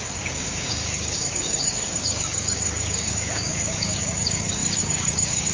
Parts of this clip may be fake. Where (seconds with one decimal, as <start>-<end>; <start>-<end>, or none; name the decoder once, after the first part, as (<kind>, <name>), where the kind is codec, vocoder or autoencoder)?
0.0-5.5 (codec, DAC)

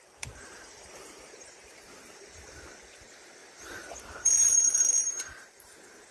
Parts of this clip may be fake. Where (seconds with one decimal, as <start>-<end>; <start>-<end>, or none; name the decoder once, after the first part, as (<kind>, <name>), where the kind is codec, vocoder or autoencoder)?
0.0-6.1 (vocoder, BigVGAN v2)

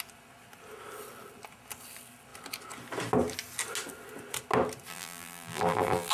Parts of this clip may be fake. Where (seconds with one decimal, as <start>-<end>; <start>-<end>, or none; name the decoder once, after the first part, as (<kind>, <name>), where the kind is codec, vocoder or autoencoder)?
4.9-6.1 (vocoder, BigVGAN v2)

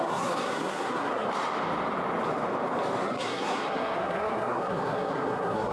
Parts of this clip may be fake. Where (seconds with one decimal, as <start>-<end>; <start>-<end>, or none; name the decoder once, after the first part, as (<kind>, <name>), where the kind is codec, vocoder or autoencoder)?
0.0-1.3 (codec, SNAC); 3.0-5.7